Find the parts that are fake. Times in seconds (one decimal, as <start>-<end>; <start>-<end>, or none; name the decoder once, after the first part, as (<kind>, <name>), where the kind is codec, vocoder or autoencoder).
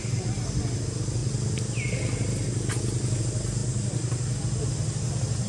none